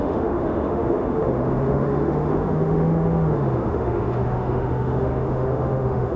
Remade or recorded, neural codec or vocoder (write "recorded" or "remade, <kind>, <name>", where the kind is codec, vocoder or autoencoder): remade, autoencoder, DAC-VAE